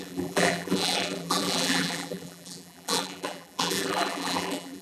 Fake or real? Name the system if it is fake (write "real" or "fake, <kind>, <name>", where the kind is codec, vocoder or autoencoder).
fake, vocoder, BigVGAN v2